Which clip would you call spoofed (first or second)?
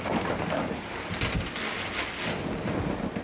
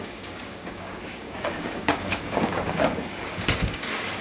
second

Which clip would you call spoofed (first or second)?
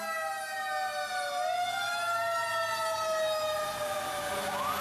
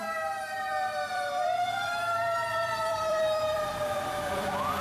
second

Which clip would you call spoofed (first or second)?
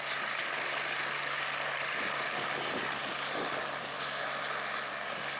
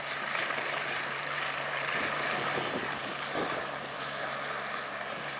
second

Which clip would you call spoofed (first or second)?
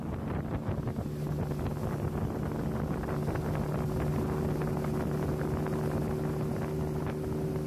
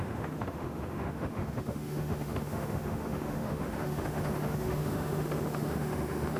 second